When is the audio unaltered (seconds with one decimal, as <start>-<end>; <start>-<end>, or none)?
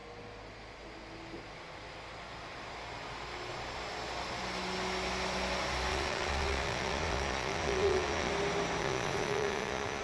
0.0-5.9; 8.3-8.8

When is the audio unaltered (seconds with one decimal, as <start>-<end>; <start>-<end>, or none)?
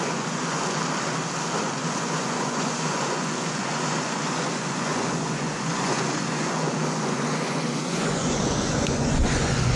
0.8-1.6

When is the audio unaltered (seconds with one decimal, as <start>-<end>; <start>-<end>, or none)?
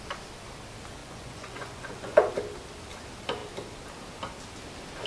0.0-1.0; 2.3-5.1